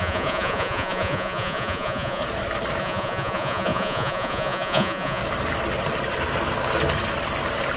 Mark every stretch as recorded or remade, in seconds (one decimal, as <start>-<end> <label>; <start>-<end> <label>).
0.0-2.2 remade; 2.2-2.8 recorded; 2.8-5.2 remade; 5.2-7.8 recorded